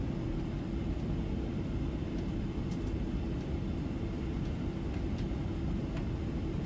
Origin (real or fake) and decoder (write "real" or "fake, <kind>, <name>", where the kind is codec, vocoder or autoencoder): real